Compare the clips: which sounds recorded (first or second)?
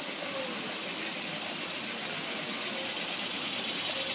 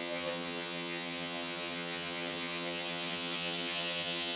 first